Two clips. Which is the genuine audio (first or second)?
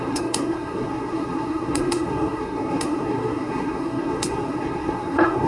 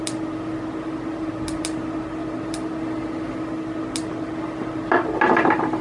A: second